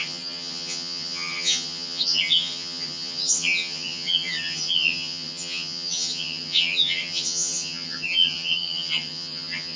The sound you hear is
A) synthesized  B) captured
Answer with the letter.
A